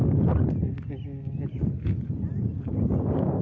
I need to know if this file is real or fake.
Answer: real